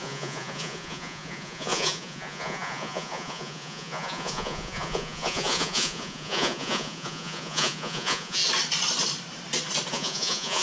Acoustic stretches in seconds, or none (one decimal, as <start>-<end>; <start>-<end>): 8.4-9.9